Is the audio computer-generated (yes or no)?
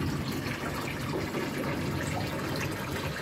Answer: no